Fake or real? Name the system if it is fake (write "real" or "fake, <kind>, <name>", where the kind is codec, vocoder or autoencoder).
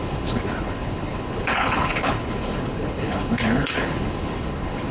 fake, codec, HILCodec